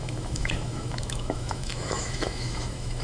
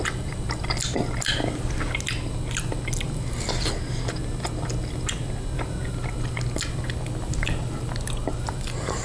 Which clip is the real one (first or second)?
second